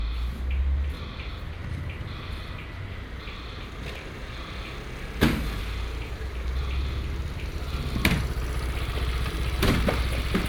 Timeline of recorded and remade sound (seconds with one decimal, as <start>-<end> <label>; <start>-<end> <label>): 0.0-10.5 recorded